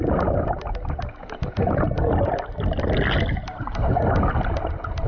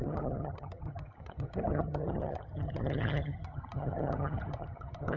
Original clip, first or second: first